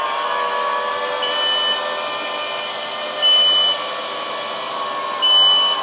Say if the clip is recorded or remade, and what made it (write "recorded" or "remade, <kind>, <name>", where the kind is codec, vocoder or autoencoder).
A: recorded